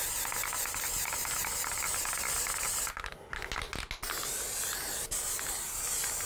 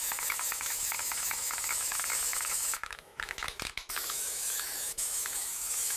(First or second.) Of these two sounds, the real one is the first